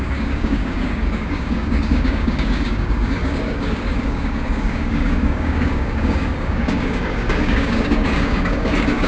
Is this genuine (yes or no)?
no